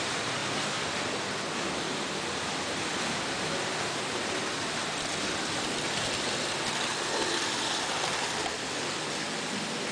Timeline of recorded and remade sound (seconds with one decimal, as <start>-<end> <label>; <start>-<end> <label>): 0.0-9.9 recorded